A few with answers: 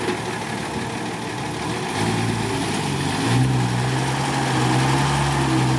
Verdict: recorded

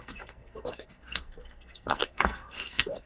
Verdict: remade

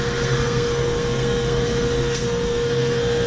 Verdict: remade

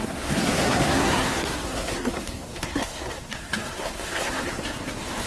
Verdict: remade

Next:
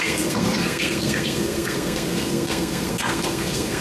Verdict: remade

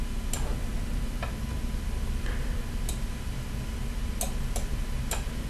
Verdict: recorded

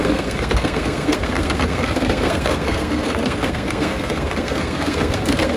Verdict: remade